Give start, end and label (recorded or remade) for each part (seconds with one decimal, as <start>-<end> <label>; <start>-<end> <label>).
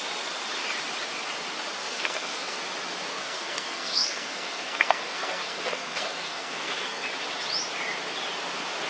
0.0-1.8 recorded; 1.8-2.6 remade; 2.6-3.1 recorded; 3.1-7.1 remade; 7.1-8.9 recorded